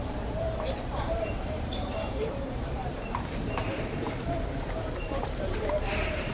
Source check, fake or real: fake